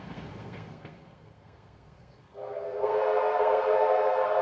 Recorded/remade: remade